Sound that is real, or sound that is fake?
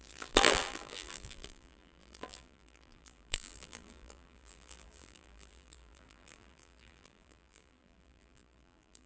fake